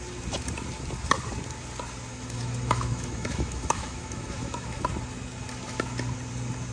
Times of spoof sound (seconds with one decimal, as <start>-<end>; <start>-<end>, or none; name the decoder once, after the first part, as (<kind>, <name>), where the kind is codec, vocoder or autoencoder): 2.1-4.8 (autoencoder, DAC-VAE)